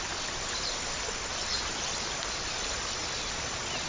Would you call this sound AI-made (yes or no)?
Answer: no